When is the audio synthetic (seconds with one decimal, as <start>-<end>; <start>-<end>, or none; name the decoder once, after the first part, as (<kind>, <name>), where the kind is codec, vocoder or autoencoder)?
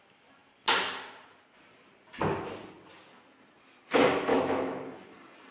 4.3-4.9 (autoencoder, DAC-VAE)